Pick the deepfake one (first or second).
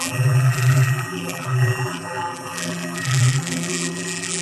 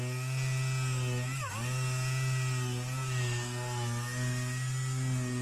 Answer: first